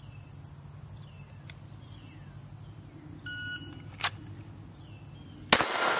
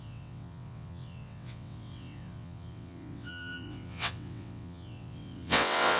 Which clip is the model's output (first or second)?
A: second